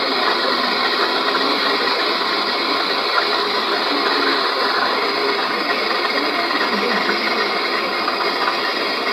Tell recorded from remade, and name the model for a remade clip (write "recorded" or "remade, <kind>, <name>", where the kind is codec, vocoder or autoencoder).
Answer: recorded